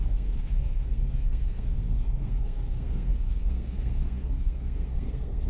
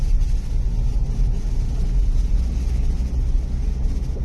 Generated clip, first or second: first